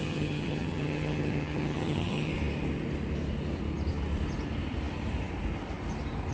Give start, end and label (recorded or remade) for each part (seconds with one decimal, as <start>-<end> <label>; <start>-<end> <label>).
0.0-2.3 remade; 2.3-6.3 recorded